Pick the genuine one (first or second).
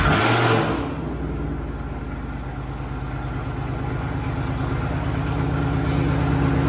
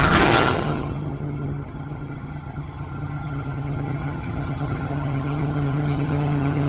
first